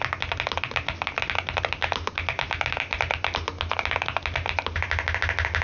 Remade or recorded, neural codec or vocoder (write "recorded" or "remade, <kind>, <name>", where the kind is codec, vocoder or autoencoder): recorded